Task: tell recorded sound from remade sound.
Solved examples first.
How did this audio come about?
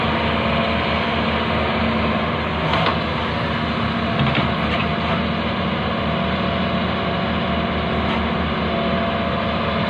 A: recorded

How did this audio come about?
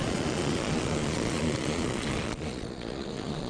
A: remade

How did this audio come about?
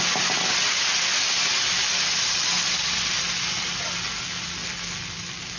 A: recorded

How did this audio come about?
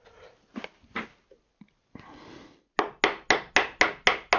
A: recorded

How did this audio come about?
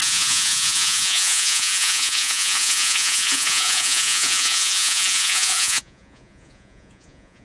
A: remade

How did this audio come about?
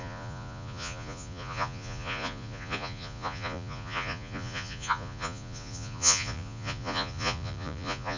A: remade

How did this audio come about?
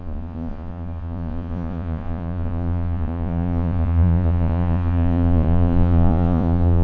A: remade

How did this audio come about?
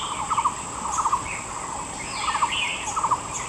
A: recorded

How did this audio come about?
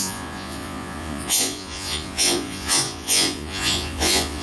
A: remade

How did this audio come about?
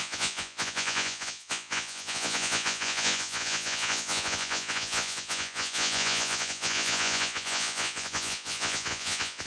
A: remade